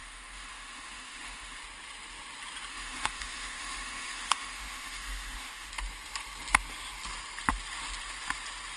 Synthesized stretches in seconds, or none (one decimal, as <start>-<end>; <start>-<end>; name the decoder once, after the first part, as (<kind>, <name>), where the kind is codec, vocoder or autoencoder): 0.0-1.6 (autoencoder, DAC-VAE); 2.7-5.7